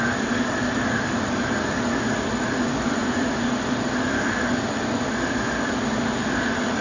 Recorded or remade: recorded